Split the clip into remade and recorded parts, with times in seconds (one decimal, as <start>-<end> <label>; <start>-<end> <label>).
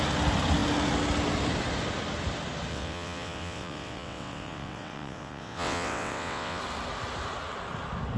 0.0-2.7 recorded; 2.7-6.6 remade; 6.6-8.2 recorded